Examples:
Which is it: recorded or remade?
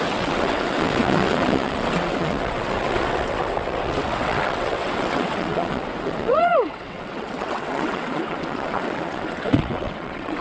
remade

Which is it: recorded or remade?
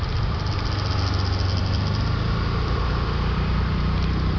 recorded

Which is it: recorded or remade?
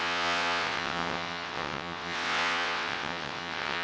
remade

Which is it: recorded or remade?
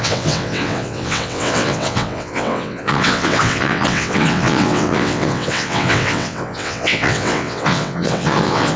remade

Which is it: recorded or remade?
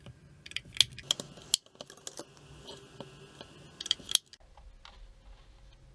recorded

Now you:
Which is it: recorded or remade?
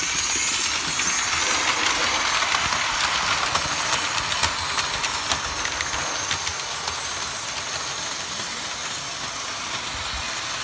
recorded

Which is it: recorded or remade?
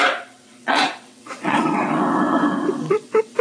remade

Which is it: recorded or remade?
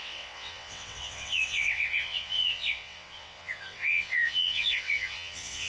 remade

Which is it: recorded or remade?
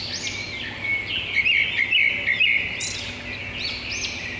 recorded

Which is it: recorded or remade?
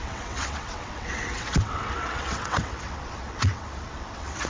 remade